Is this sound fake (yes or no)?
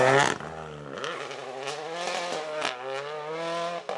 no